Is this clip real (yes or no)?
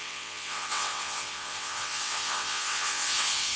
no